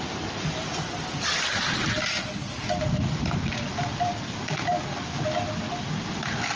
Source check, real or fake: real